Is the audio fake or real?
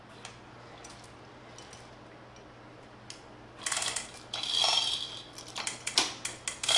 real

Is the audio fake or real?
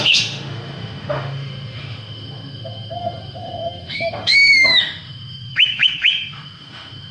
fake